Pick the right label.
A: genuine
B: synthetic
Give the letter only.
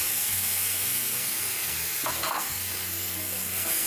B